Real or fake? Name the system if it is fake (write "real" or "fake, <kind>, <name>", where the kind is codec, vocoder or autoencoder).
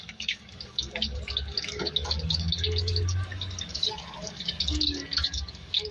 fake, codec, DAC